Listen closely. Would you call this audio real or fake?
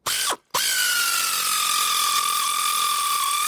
real